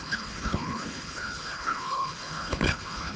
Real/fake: fake